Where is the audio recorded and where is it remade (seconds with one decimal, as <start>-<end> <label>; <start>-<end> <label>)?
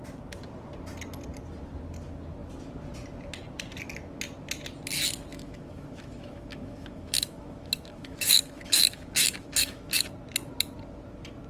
0.0-5.3 recorded; 5.3-10.1 remade; 10.1-11.5 recorded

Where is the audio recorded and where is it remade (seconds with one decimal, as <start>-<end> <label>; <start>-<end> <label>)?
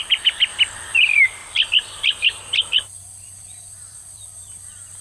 0.0-0.5 remade; 0.5-1.0 recorded; 1.0-1.4 remade; 1.4-2.0 recorded; 2.0-5.0 remade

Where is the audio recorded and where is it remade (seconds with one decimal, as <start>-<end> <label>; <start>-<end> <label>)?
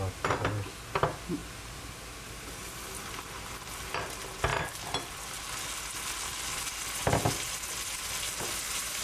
0.0-9.0 recorded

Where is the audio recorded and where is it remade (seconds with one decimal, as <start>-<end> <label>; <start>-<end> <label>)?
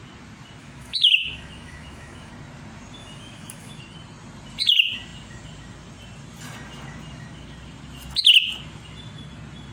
0.0-0.6 recorded; 0.6-2.3 remade; 2.3-3.0 recorded; 3.0-3.8 remade; 3.8-9.7 recorded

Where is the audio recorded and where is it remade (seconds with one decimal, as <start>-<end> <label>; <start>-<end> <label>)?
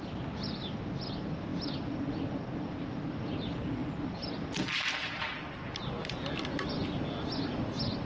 0.0-8.1 recorded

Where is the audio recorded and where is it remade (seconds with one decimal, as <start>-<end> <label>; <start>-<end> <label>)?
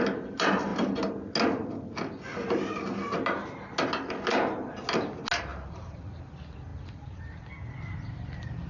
0.0-5.5 recorded; 5.5-6.3 remade; 6.3-6.7 recorded; 6.7-7.2 remade; 7.2-8.7 recorded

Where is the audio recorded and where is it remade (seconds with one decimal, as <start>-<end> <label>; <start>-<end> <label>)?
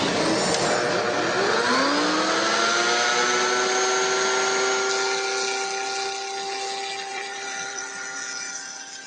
0.0-7.1 recorded; 7.1-7.8 remade; 7.8-9.1 recorded